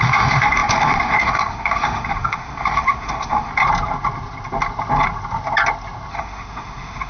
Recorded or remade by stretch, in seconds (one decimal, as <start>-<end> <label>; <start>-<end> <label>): 0.0-3.5 remade; 3.5-6.1 recorded; 6.1-7.1 remade